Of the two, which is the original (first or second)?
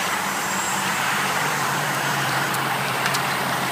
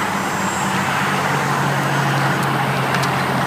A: second